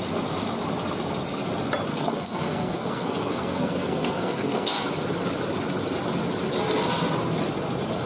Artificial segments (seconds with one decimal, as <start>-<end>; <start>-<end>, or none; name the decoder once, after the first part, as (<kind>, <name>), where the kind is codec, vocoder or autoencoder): 1.9-4.8 (codec, SNAC)